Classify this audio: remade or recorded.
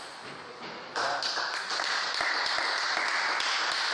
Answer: recorded